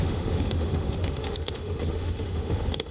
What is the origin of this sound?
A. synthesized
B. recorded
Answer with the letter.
A